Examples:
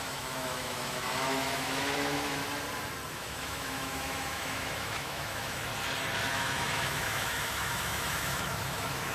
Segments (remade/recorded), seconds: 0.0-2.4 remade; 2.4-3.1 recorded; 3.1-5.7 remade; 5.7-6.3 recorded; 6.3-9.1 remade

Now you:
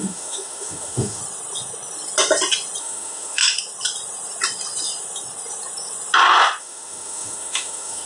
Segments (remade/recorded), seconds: 0.0-1.2 remade; 1.2-2.8 recorded; 2.8-3.4 remade; 3.4-6.6 recorded; 6.6-8.1 remade